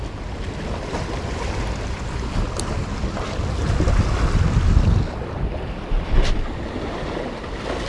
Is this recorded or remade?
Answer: recorded